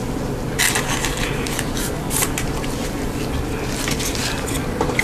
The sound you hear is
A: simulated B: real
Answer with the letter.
B